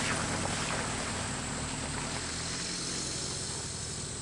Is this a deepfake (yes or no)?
no